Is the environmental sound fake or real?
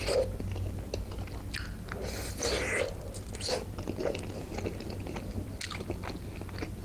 real